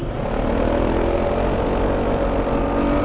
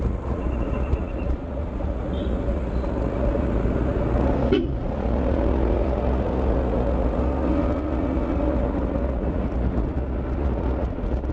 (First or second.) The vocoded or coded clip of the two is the second